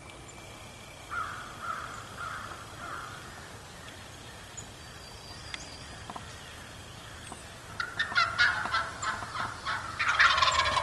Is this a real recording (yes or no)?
yes